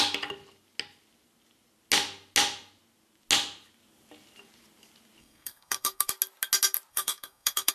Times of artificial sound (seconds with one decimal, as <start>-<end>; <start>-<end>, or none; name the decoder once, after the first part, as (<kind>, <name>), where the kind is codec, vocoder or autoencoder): 5.2-6.1 (codec, SNAC); 6.9-7.7